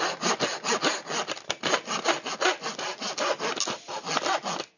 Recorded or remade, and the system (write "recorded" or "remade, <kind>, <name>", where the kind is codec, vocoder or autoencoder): recorded